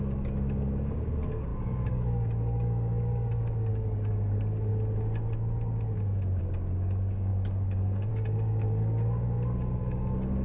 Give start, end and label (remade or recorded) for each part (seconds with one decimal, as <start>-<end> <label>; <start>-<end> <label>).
0.0-4.7 remade; 4.7-6.4 recorded; 6.4-10.4 remade